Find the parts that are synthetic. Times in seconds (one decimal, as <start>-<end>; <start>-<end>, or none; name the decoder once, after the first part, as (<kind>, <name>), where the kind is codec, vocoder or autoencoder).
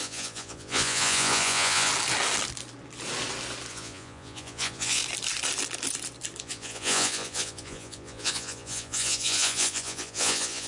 0.0-1.9 (vocoder, Vocos); 3.7-5.0; 6.4-10.7